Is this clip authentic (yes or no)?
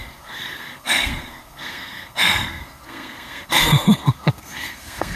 no